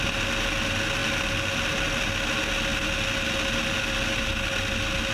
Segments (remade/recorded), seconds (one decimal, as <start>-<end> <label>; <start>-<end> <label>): 0.0-5.1 recorded